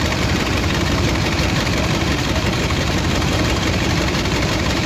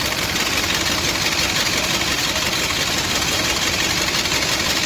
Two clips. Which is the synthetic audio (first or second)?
first